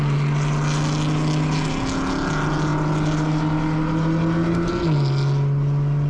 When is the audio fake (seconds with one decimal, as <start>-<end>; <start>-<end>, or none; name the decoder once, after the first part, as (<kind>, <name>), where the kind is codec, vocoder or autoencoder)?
none